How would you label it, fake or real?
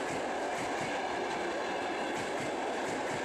real